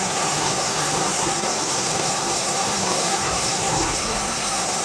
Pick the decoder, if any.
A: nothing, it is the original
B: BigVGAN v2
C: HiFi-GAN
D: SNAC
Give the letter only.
D